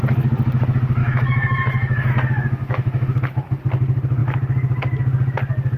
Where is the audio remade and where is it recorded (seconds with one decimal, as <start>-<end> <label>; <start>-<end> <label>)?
0.0-1.0 recorded; 1.0-2.1 remade; 2.1-2.6 recorded; 2.6-3.6 remade; 3.6-5.8 recorded